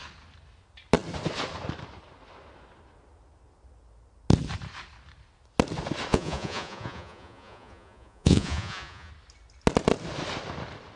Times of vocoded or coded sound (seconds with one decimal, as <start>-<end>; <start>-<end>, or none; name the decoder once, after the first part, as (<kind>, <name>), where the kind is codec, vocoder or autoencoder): 6.1-9.1 (vocoder, Vocos)